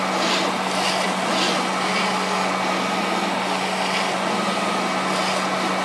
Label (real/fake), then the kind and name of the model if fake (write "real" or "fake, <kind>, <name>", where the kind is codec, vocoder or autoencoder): real